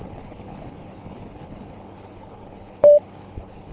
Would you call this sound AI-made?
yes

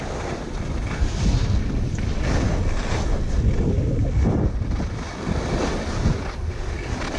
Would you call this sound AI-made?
no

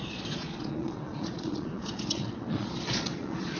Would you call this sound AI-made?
yes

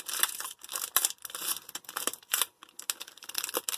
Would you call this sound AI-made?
no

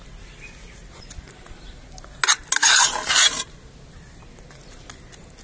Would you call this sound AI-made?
no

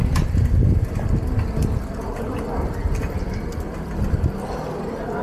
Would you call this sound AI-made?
no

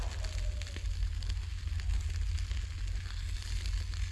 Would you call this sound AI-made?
no